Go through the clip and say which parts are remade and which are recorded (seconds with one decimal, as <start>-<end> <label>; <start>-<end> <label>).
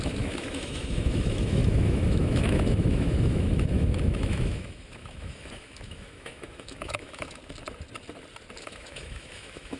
0.0-7.4 remade; 7.4-8.6 recorded; 8.6-9.8 remade